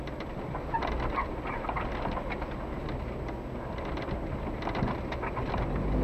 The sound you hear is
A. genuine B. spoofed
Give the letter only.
A